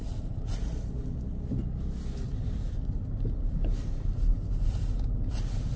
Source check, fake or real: real